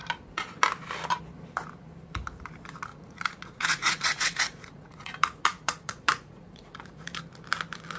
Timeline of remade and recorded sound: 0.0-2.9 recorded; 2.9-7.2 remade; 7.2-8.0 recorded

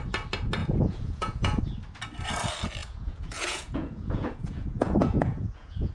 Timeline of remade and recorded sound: 0.0-0.6 recorded; 0.6-1.6 remade; 1.6-2.8 recorded; 2.8-5.9 remade

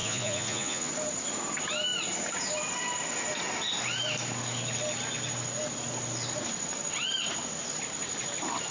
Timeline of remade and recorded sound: 0.0-0.9 remade; 0.9-8.7 recorded

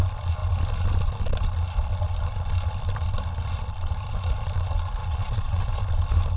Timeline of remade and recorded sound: 0.0-5.0 recorded; 5.0-5.8 remade; 5.8-6.4 recorded

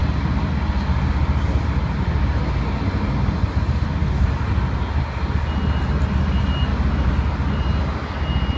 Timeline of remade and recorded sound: 0.0-8.6 recorded

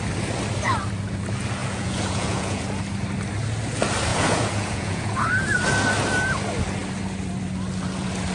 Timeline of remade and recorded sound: 0.0-1.6 recorded; 1.6-2.8 remade; 2.8-4.1 recorded; 4.1-5.3 remade; 5.3-8.3 recorded

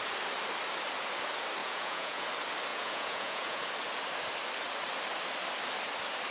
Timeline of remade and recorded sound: 0.0-1.6 recorded; 1.6-2.3 remade; 2.3-2.7 recorded; 2.7-3.6 remade; 3.6-6.3 recorded